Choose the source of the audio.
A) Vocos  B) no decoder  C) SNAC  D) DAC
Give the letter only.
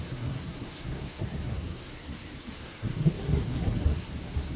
C